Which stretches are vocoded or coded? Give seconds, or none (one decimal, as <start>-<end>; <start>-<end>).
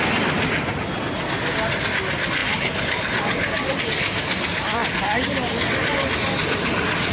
2.4-3.8